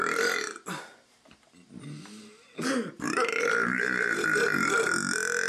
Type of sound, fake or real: real